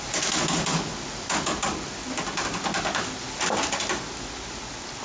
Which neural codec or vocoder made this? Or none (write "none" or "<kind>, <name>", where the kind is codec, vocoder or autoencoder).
none